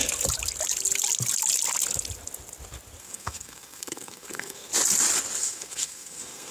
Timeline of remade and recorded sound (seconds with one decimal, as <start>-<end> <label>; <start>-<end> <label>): 0.0-3.0 recorded; 3.0-4.7 remade; 4.7-5.4 recorded; 5.4-6.5 remade